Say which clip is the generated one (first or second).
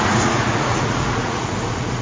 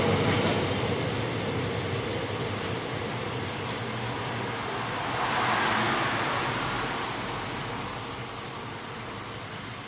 first